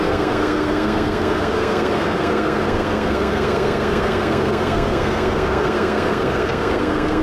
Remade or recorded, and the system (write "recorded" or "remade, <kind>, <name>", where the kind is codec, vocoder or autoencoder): remade, codec, SNAC